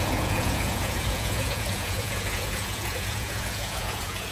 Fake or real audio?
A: fake